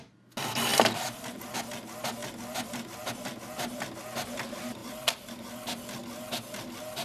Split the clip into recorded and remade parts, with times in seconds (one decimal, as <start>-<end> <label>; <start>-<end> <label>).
0.0-0.7 recorded; 0.7-1.5 remade; 1.5-2.2 recorded; 2.2-3.1 remade; 3.1-4.8 recorded; 4.8-5.3 remade; 5.3-7.0 recorded